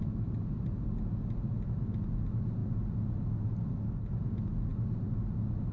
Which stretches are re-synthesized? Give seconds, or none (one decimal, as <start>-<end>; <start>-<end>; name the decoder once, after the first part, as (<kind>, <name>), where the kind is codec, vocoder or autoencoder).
none